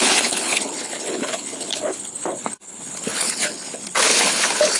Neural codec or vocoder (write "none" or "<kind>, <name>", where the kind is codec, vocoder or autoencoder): codec, HILCodec